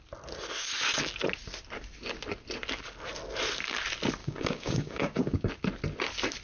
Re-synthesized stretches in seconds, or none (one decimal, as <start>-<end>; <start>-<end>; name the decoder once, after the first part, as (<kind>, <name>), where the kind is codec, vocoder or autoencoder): 4.2-5.5 (codec, DAC)